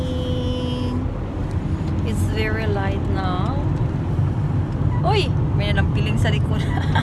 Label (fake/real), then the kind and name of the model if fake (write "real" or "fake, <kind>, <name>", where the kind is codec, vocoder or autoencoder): real